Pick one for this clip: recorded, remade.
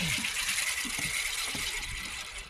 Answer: remade